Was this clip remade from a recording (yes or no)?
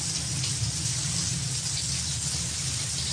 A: no